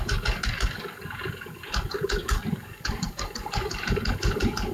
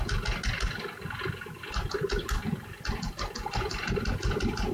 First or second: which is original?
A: second